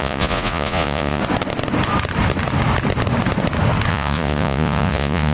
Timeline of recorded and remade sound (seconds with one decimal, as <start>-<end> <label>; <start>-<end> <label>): 0.0-1.2 remade; 1.2-3.9 recorded; 3.9-5.3 remade